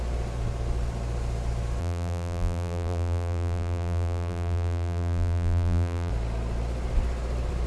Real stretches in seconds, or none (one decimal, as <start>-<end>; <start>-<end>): 0.0-1.8; 6.1-7.7